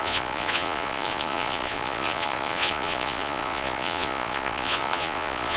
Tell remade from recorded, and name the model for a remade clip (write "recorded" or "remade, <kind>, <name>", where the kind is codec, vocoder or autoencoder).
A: remade, vocoder, Vocos